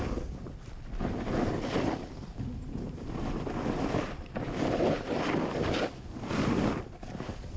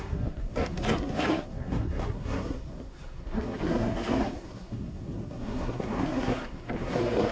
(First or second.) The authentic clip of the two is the first